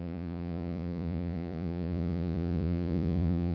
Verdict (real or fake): fake